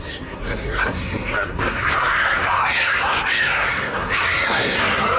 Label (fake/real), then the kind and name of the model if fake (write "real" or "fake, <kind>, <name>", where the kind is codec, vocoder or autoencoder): fake, codec, SNAC